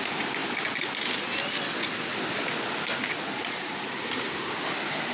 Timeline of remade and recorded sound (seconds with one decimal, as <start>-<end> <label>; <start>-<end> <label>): 0.0-5.1 recorded